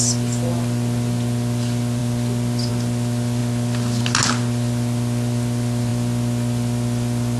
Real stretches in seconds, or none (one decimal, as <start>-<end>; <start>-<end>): 0.0-7.4